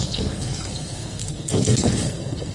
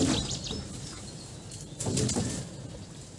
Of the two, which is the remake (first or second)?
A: first